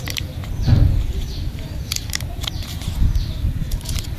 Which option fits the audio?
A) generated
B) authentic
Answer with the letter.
A